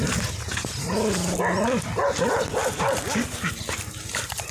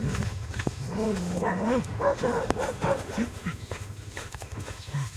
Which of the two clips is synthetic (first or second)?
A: second